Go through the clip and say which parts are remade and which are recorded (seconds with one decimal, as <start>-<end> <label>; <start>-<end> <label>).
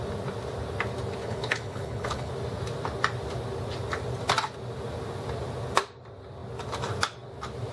0.0-1.2 recorded; 1.2-2.3 remade; 2.3-7.7 recorded